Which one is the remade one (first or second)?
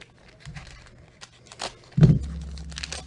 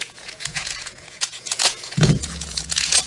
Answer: second